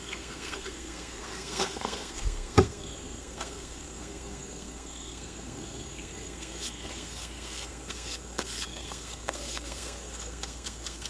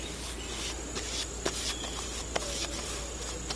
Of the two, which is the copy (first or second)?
first